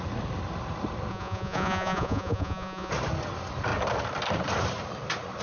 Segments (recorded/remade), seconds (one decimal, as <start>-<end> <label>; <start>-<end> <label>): 0.0-1.1 recorded; 1.1-2.9 remade; 2.9-5.4 recorded